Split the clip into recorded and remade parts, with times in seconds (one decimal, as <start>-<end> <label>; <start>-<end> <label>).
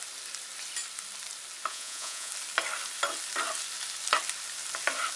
0.0-1.7 recorded; 1.7-2.3 remade; 2.3-5.2 recorded